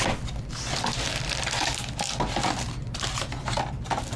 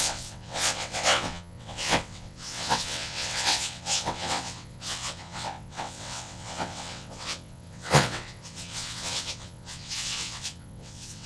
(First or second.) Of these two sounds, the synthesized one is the second